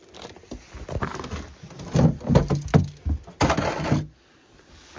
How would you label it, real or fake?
real